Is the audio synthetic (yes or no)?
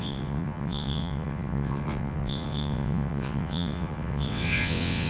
yes